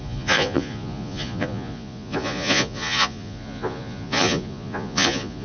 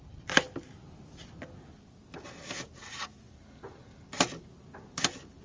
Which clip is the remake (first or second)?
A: first